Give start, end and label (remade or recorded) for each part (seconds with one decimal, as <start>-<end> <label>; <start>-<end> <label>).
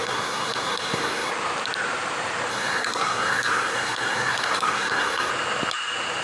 0.0-1.3 remade; 1.3-2.5 recorded; 2.5-5.3 remade; 5.3-6.2 recorded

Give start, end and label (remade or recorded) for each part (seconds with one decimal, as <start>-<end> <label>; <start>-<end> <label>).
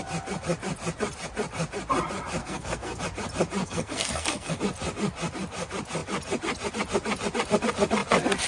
0.0-2.4 recorded; 2.4-3.0 remade; 3.0-3.6 recorded; 3.6-4.6 remade; 4.6-8.5 recorded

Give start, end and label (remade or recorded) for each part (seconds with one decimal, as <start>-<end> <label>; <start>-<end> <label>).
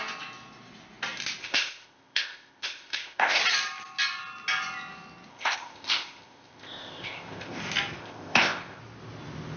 0.0-1.4 recorded; 1.4-3.4 remade; 3.4-5.3 recorded; 5.3-7.6 remade; 7.6-8.0 recorded; 8.0-8.8 remade; 8.8-9.6 recorded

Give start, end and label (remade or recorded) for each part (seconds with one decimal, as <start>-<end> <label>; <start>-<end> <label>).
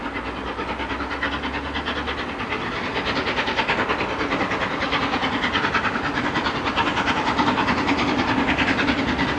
0.0-9.4 recorded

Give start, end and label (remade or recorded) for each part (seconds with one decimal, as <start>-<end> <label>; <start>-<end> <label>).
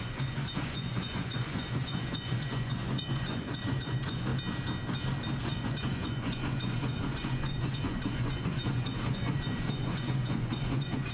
0.0-4.3 remade; 4.3-5.4 recorded; 5.4-11.1 remade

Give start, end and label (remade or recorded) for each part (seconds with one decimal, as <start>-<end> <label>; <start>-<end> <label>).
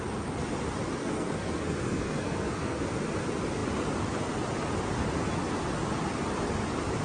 0.0-1.0 recorded; 1.0-2.8 remade; 2.8-7.0 recorded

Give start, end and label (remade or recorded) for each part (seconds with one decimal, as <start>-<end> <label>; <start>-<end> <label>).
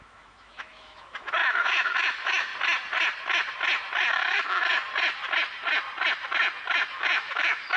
0.0-2.5 remade; 2.5-4.1 recorded; 4.1-4.7 remade; 4.7-6.9 recorded; 6.9-7.8 remade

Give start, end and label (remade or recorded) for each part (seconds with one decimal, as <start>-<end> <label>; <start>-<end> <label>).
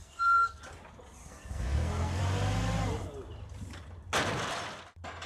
0.0-0.6 remade; 0.6-1.2 recorded; 1.2-2.2 remade; 2.2-5.3 recorded